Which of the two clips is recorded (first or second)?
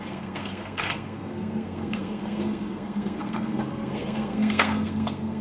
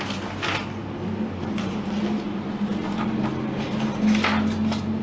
second